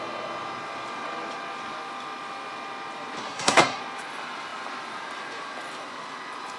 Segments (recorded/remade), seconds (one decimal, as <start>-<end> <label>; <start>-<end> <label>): 0.0-3.2 recorded; 3.2-3.8 remade; 3.8-6.6 recorded